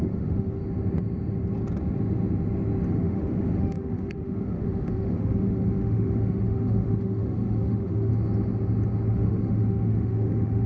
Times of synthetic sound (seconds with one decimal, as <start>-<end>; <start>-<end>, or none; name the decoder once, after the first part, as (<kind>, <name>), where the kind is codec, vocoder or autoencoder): 0.0-0.6 (autoencoder, DAC-VAE); 2.9-8.1; 9.1-10.7